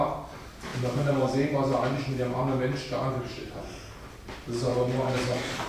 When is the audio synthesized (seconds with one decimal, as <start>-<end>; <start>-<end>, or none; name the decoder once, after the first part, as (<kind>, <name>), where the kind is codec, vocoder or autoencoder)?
none